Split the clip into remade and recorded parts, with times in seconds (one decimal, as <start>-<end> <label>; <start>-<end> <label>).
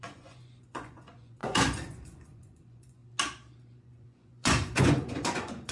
0.0-3.0 remade; 3.0-3.8 recorded; 3.8-5.7 remade